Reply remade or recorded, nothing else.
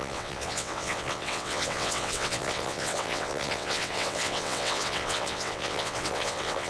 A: remade